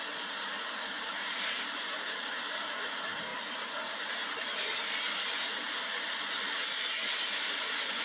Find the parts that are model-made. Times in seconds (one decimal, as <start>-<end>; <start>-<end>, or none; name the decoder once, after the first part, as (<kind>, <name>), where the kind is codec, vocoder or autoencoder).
none